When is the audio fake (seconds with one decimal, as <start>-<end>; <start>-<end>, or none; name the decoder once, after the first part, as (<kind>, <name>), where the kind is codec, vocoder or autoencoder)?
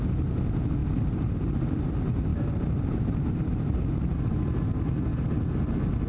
0.8-1.9 (vocoder, BigVGAN v2); 2.3-3.8; 5.1-5.6